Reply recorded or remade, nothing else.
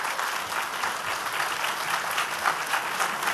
recorded